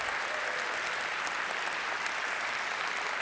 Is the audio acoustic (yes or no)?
yes